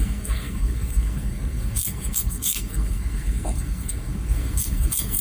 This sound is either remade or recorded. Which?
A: remade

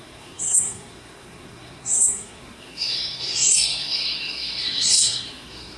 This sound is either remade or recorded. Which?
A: remade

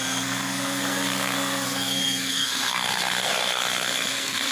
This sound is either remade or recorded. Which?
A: remade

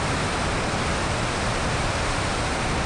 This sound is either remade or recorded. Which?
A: recorded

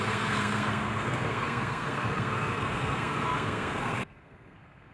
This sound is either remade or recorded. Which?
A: remade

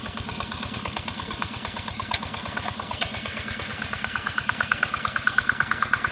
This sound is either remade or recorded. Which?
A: remade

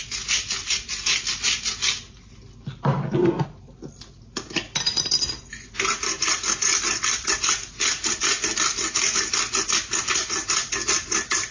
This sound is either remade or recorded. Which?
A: recorded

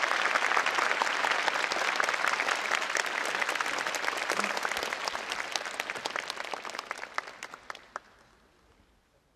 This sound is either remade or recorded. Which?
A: recorded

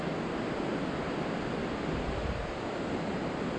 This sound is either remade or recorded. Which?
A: recorded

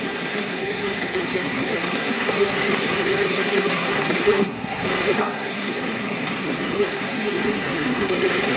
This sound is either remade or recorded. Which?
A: remade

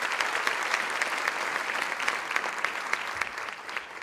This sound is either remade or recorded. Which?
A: recorded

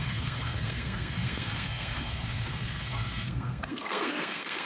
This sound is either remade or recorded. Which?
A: remade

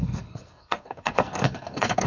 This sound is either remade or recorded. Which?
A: remade